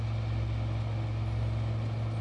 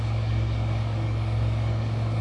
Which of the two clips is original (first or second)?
first